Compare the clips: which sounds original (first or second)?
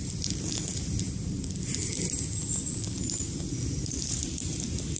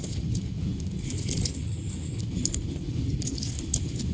first